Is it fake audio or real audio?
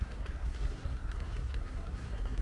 fake